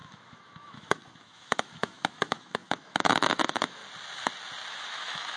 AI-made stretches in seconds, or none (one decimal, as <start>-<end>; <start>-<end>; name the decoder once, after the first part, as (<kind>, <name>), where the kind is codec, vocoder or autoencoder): 0.0-3.8 (autoencoder, DAC-VAE); 4.7-5.4